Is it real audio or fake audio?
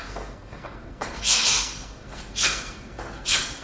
fake